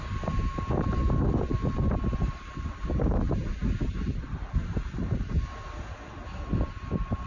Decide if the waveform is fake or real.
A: real